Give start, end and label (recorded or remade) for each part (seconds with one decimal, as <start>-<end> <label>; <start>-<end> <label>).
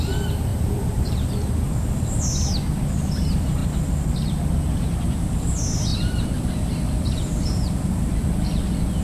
0.0-0.5 recorded; 0.5-1.3 remade; 1.3-5.9 recorded; 5.9-6.9 remade; 6.9-9.0 recorded